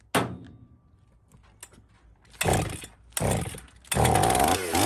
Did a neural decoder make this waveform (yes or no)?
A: no